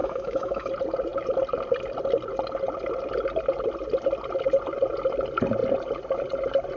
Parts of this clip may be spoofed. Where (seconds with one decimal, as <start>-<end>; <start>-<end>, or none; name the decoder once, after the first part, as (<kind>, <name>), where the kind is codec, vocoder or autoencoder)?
0.0-0.7 (autoencoder, DAC-VAE)